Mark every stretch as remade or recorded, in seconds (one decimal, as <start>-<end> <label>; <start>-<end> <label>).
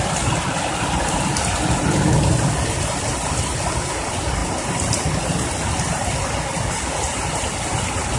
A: 0.0-8.2 recorded